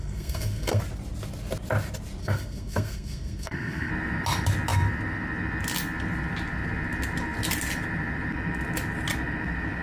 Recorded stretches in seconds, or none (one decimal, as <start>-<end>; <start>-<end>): 0.8-2.2; 3.9-9.8